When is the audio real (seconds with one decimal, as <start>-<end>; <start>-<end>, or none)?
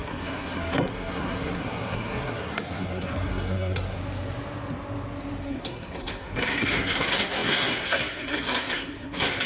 4.0-5.4